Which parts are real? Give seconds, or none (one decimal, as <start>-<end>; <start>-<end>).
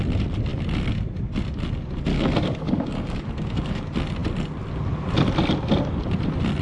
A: 0.0-2.1; 3.8-6.6